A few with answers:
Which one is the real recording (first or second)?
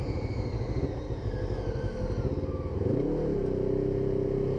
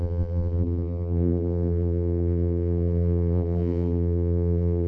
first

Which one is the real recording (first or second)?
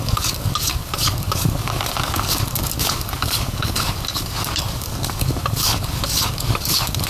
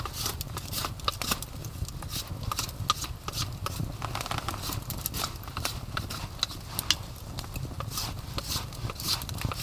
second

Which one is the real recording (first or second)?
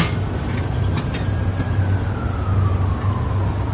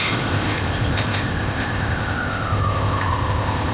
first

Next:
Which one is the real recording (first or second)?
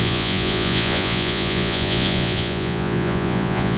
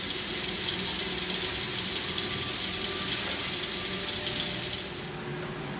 second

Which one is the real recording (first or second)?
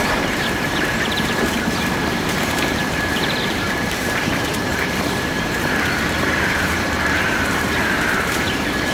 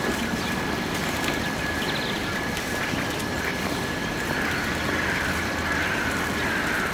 second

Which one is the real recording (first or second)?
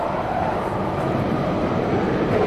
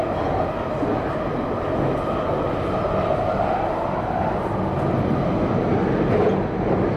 second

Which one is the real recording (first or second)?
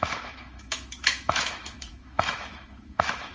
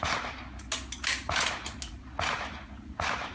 second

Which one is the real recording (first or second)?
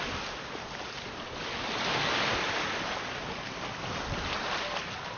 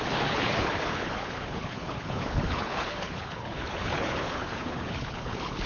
first